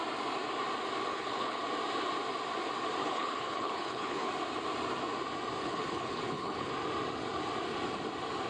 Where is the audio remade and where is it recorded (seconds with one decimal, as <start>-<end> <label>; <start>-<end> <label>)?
0.0-1.1 recorded; 1.1-1.6 remade; 1.6-3.0 recorded; 3.0-4.3 remade; 4.3-5.6 recorded; 5.6-6.7 remade; 6.7-8.5 recorded